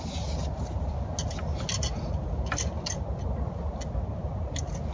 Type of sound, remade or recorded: recorded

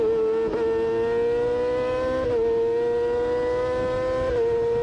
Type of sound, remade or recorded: recorded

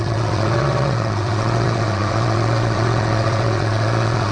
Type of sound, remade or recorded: remade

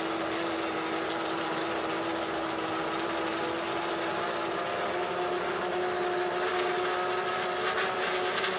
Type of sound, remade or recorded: recorded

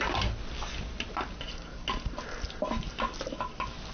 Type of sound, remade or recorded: recorded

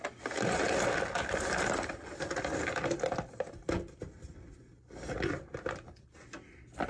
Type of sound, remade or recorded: recorded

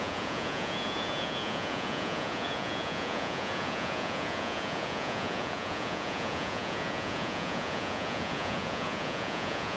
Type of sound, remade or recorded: remade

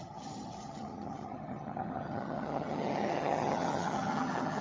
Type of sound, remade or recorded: remade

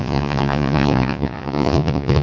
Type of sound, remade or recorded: remade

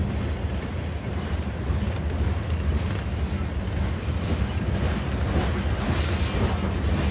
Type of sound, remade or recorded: recorded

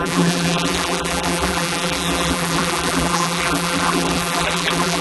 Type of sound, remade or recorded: remade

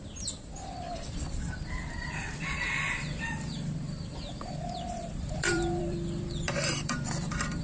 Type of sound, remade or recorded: remade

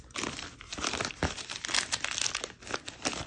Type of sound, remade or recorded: recorded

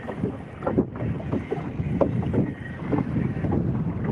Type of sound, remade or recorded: recorded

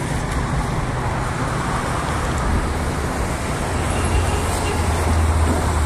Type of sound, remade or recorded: recorded